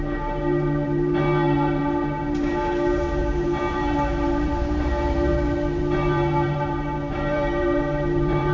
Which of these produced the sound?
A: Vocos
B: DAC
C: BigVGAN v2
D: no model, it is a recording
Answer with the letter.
C